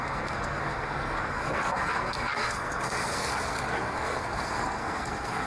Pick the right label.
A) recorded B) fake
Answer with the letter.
B